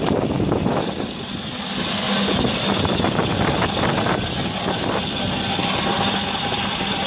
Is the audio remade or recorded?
recorded